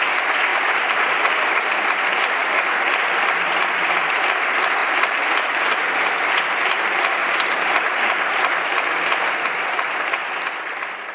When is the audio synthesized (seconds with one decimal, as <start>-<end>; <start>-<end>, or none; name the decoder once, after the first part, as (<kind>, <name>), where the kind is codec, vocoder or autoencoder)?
0.5-1.5 (vocoder, BigVGAN v2); 4.8-6.1; 7.2-8.7